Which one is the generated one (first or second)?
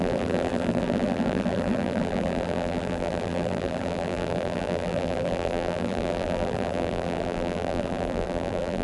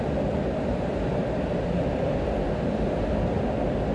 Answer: first